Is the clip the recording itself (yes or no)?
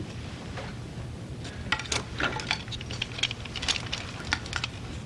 yes